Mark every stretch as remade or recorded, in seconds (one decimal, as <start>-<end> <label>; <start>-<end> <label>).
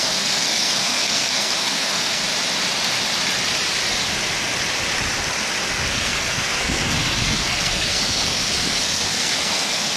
0.0-2.2 remade; 2.2-5.9 recorded; 5.9-10.0 remade